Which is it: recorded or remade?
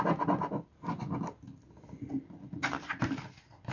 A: recorded